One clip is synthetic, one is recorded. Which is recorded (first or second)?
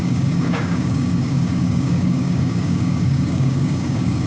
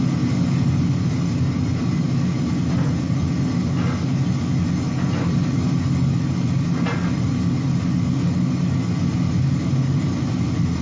second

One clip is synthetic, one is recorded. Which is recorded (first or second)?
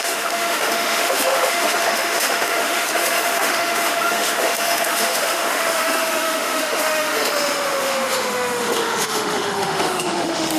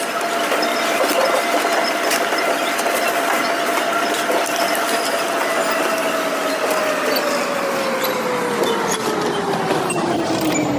second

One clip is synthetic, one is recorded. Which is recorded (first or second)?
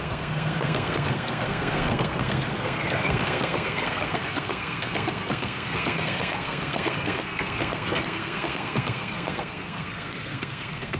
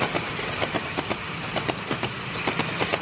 second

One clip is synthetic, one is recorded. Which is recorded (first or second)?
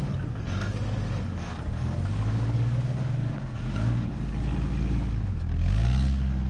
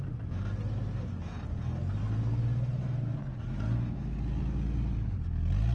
second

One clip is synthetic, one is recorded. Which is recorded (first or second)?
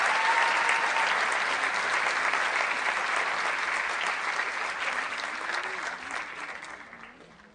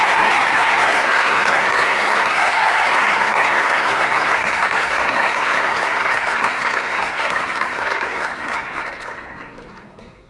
first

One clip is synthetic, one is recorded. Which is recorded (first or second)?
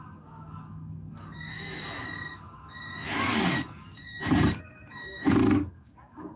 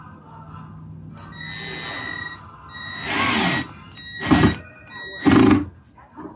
second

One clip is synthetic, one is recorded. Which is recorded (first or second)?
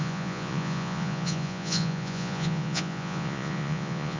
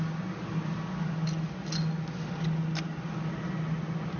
second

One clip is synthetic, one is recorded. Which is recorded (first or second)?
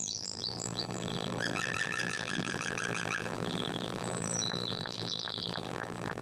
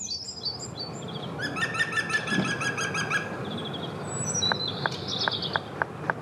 second